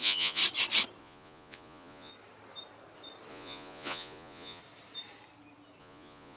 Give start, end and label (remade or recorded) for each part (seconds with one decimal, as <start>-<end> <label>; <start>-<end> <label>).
0.0-0.4 remade; 0.4-1.0 recorded; 1.0-2.1 remade; 2.1-3.3 recorded; 3.3-4.6 remade; 4.6-5.8 recorded; 5.8-6.4 remade